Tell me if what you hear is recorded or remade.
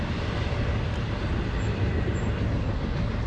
recorded